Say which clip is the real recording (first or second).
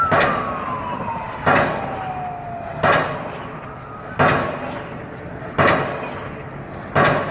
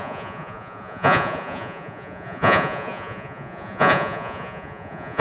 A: first